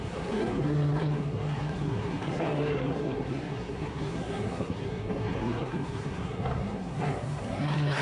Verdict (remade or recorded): remade